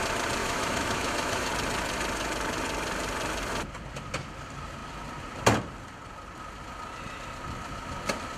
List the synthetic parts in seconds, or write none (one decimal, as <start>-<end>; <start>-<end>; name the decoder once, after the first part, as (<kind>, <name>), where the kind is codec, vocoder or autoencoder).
0.4-1.5 (autoencoder, DAC-VAE)